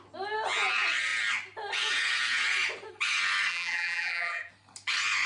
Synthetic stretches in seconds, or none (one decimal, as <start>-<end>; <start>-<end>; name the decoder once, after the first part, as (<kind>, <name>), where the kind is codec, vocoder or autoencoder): 3.5-4.5 (vocoder, BigVGAN v2)